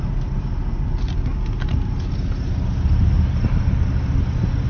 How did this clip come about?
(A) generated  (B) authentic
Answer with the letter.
B